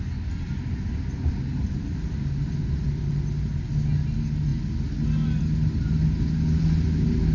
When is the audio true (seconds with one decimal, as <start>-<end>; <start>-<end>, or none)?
0.0-7.3